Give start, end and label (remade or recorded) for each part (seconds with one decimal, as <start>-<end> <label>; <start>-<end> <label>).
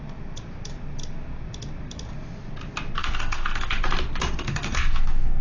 0.0-3.0 recorded; 3.0-3.8 remade; 3.8-4.5 recorded; 4.5-5.4 remade